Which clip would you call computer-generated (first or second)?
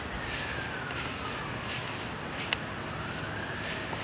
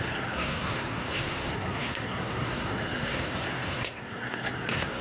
second